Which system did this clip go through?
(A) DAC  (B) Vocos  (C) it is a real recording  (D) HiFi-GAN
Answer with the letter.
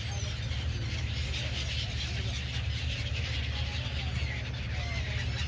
C